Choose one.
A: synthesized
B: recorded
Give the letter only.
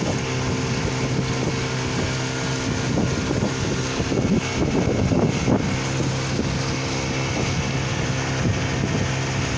B